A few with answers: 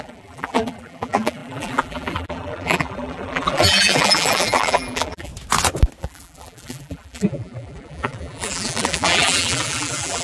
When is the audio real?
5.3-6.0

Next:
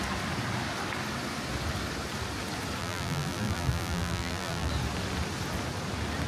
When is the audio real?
0.0-2.8; 4.7-6.3

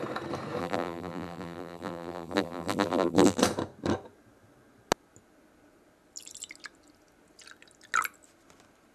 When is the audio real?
0.0-0.6; 3.4-8.9

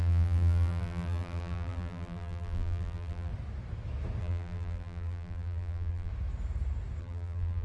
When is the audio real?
3.3-4.2; 6.1-7.0

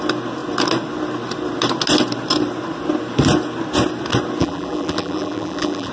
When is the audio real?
0.0-4.4

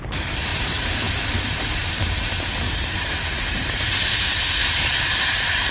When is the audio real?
0.0-0.5; 1.3-1.8; 3.9-4.6

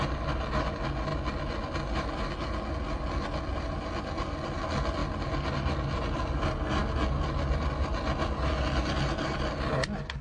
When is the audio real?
0.0-10.2